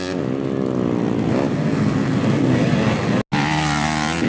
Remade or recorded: recorded